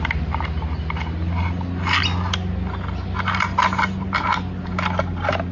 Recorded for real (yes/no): yes